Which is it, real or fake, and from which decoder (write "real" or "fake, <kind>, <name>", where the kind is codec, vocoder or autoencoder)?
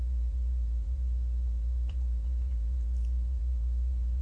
fake, vocoder, BigVGAN v2